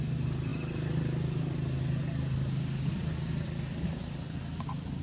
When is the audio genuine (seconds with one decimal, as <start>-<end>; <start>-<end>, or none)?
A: 0.0-5.0